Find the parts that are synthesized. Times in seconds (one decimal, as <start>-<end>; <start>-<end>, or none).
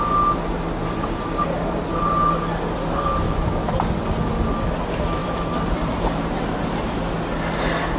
5.2-6.6